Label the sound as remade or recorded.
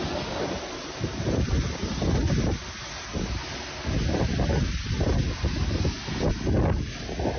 recorded